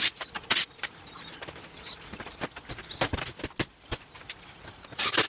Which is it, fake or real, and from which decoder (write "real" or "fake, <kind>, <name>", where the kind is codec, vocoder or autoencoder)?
fake, vocoder, BigVGAN v2